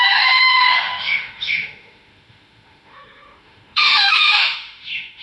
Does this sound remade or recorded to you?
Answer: remade